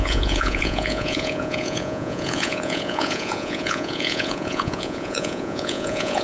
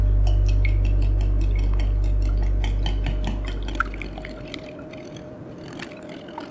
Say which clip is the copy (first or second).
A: first